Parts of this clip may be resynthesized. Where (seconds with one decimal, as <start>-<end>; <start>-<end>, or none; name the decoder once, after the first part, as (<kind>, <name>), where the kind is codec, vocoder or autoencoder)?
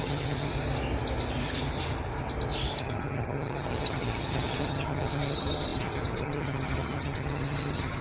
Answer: 0.0-0.5 (vocoder, HiFi-GAN); 2.8-8.0